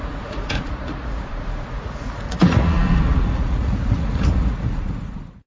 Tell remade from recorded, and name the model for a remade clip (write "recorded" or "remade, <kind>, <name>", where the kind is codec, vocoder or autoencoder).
remade, vocoder, Vocos